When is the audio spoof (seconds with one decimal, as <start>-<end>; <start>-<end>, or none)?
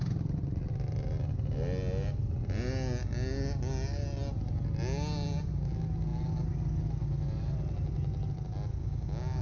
8.8-9.4